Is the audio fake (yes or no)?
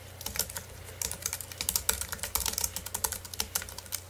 no